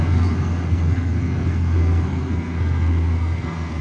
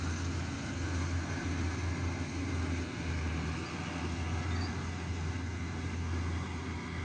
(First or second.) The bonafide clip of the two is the second